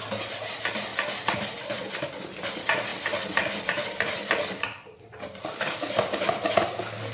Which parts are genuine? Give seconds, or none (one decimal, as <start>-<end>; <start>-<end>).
0.0-2.9; 6.5-7.1